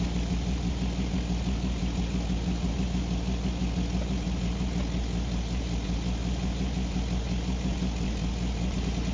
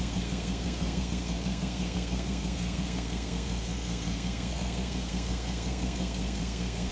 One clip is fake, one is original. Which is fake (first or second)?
second